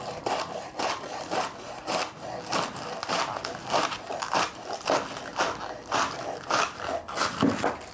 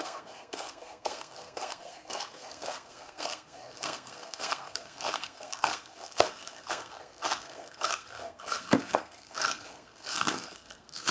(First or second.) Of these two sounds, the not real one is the second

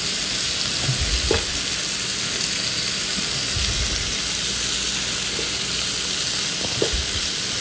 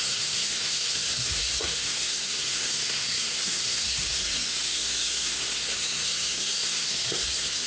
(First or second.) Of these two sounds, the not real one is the second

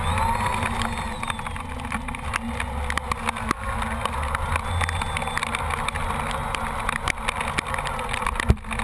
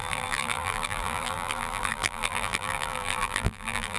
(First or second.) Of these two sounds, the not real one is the second